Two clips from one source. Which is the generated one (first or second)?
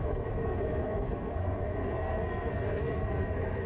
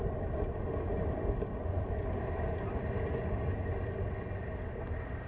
first